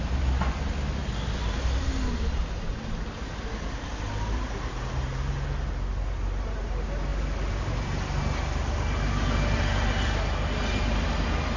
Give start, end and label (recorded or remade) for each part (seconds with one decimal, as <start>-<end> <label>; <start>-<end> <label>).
0.0-11.6 recorded